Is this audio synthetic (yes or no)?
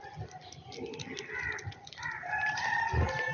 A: no